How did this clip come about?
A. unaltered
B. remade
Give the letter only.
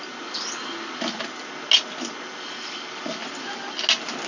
A